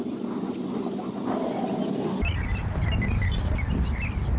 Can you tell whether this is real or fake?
real